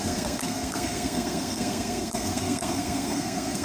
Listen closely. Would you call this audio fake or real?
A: fake